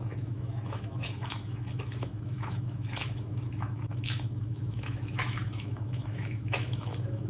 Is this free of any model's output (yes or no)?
no